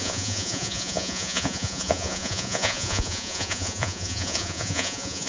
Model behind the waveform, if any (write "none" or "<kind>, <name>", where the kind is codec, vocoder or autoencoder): vocoder, Vocos